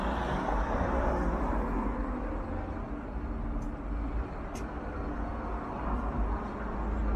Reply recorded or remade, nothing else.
recorded